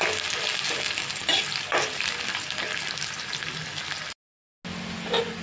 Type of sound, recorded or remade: recorded